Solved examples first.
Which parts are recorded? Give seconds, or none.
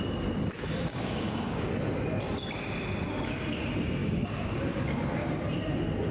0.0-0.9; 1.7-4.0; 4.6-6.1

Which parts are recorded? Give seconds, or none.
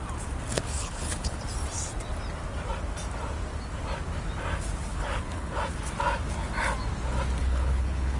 0.0-0.5; 1.4-4.9; 5.6-7.4